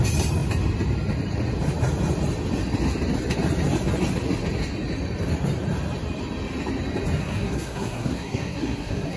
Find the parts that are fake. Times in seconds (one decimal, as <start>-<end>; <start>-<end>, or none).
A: 7.2-9.2